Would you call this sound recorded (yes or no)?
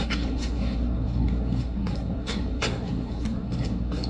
no